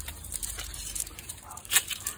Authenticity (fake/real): fake